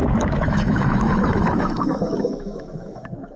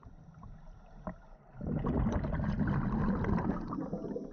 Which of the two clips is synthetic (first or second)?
first